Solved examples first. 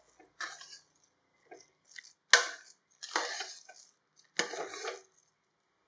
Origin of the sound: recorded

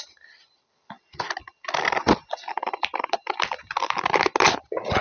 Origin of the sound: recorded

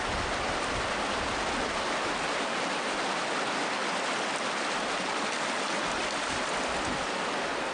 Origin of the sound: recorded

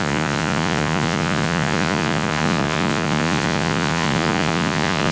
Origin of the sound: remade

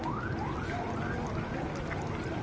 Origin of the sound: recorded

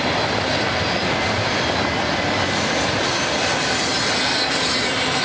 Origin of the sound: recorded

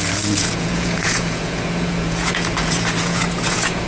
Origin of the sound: remade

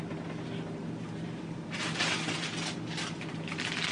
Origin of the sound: recorded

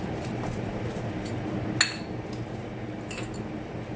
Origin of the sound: recorded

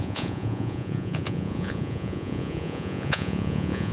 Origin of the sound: remade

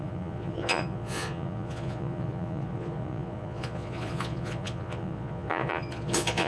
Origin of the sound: remade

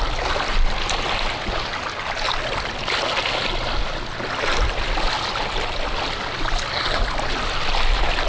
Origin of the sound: recorded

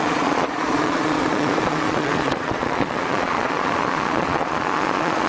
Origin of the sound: remade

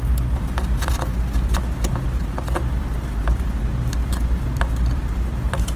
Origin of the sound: recorded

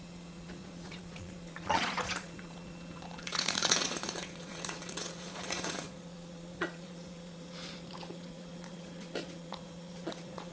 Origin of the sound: remade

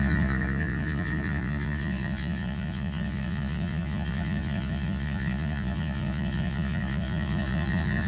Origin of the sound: remade